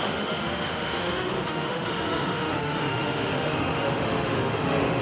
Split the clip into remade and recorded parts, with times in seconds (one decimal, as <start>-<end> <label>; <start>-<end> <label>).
0.0-5.0 remade